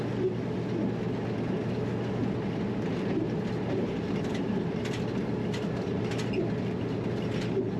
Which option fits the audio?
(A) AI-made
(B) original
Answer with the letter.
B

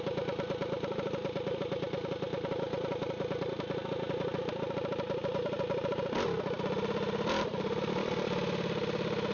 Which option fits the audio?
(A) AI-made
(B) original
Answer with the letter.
B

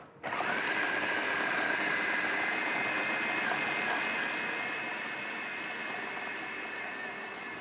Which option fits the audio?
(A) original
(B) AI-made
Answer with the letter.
A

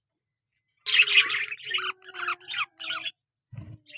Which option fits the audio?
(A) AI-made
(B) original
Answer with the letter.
B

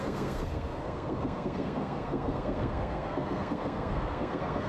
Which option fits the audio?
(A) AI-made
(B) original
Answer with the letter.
A